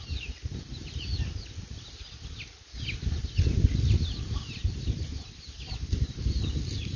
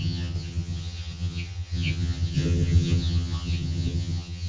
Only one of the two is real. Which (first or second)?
first